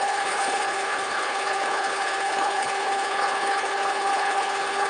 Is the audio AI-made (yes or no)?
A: yes